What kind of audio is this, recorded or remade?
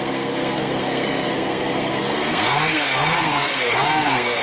remade